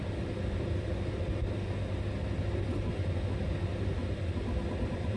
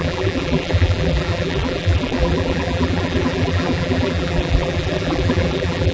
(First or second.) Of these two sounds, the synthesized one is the second